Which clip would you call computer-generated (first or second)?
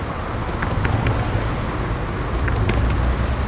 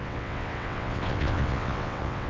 second